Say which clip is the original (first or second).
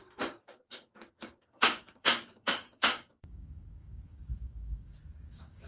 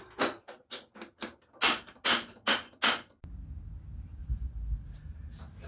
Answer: second